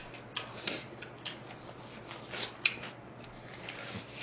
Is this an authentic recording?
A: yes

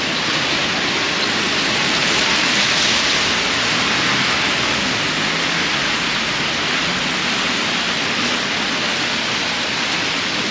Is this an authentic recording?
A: yes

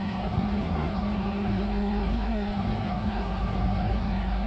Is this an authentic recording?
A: no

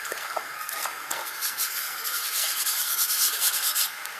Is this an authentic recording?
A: no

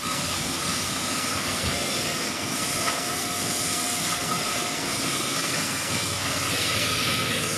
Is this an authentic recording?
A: no